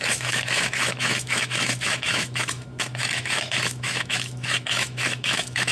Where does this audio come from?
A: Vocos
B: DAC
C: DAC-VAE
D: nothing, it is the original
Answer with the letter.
C